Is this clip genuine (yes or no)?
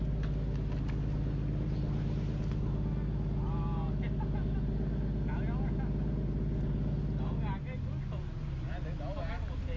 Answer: yes